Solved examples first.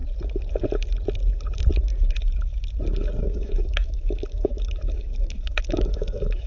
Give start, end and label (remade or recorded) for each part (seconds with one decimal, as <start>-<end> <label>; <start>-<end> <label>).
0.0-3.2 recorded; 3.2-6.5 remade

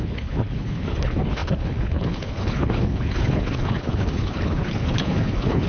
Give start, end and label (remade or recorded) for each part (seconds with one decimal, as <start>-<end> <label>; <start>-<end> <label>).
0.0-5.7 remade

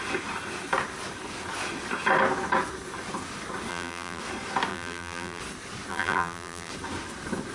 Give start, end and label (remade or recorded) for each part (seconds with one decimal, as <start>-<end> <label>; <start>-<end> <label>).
0.0-3.7 recorded; 3.7-4.2 remade; 4.2-4.7 recorded; 4.7-5.4 remade; 5.4-5.9 recorded; 5.9-6.7 remade; 6.7-7.5 recorded